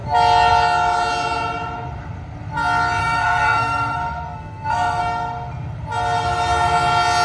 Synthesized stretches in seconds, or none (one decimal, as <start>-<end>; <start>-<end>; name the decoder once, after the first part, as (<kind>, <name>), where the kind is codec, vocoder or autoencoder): 3.0-5.0 (codec, SNAC)